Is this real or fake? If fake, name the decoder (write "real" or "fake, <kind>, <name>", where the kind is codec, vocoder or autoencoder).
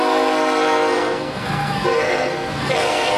fake, codec, SNAC